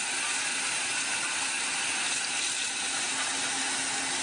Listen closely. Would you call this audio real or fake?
real